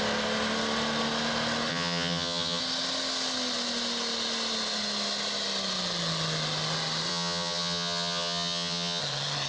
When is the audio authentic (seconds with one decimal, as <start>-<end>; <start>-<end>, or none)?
0.0-1.7; 2.6-7.1; 9.0-9.5